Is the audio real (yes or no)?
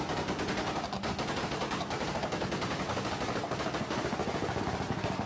yes